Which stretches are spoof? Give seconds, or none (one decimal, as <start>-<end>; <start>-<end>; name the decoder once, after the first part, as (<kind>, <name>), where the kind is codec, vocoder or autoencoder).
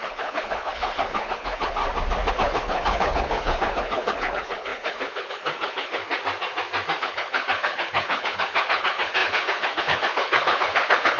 0.0-1.8 (codec, HILCodec); 2.3-6.0; 7.0-11.2